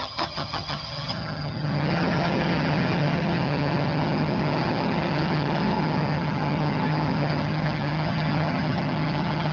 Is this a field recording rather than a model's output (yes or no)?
no